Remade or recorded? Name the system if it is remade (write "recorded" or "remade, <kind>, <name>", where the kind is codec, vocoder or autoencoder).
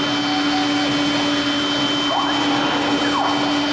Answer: recorded